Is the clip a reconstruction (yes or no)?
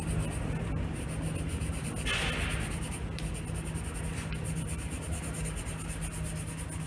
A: no